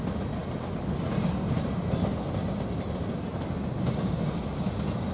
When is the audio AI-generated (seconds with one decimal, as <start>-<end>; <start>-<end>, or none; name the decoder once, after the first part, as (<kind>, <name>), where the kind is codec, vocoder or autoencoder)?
none